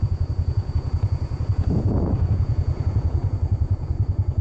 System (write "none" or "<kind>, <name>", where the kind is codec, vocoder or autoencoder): vocoder, Vocos